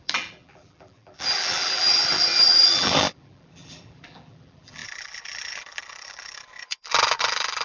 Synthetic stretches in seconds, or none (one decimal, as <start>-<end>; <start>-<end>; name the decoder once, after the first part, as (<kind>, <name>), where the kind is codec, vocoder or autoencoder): 0.0-7.6 (vocoder, BigVGAN v2)